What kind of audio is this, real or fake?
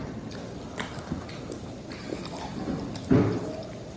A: real